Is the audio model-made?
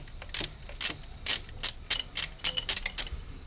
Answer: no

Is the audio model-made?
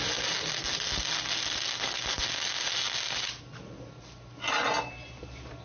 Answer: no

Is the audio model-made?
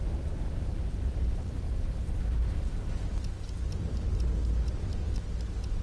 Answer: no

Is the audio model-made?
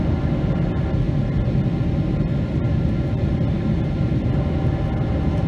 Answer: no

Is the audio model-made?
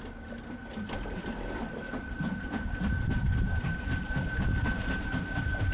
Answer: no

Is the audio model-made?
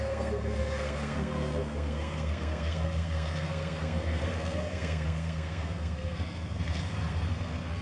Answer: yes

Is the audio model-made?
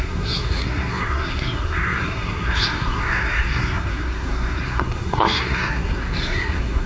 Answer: yes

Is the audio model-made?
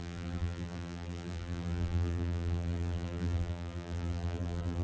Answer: yes